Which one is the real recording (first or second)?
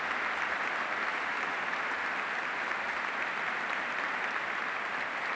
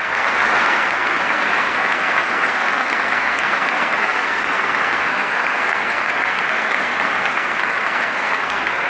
first